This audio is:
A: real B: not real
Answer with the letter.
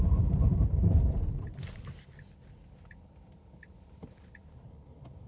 A